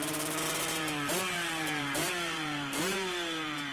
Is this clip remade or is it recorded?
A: remade